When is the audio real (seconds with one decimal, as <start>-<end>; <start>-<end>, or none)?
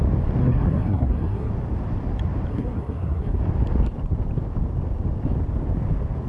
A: 0.0-0.4; 1.5-2.5; 3.4-6.3